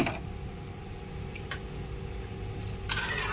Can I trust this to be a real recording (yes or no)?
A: yes